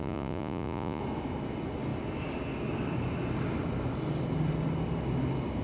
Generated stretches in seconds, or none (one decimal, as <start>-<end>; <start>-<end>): 0.0-1.0